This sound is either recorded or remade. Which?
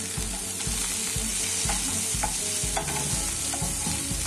recorded